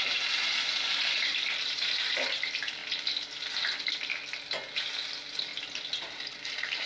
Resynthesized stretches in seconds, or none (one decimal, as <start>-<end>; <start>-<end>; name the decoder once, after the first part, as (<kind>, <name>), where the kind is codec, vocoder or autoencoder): 0.0-2.8 (vocoder, BigVGAN v2); 4.8-5.5; 6.0-6.9